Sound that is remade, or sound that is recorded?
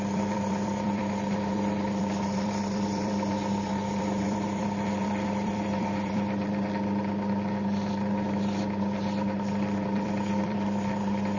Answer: remade